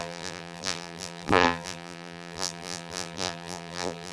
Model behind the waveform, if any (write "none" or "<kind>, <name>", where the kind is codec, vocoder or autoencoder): vocoder, BigVGAN v2